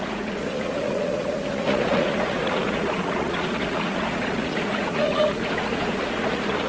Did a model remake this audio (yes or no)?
yes